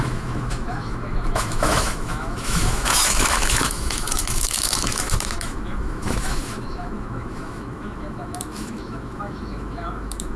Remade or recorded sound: remade